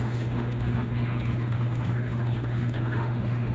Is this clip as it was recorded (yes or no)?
no